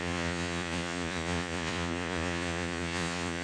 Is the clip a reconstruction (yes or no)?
yes